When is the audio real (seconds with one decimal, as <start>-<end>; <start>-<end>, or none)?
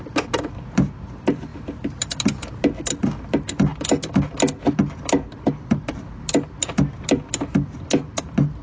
0.0-8.6